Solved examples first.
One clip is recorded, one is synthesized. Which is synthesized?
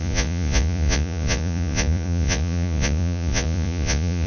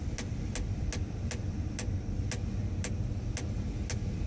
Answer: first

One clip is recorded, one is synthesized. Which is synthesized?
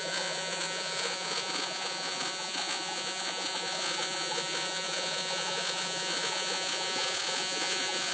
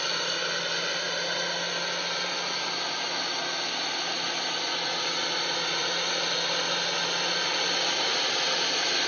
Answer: first